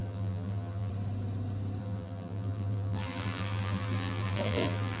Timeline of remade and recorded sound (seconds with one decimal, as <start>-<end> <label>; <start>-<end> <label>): 0.0-0.9 remade; 0.9-1.8 recorded; 1.8-5.0 remade